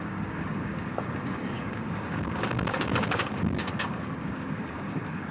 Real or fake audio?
fake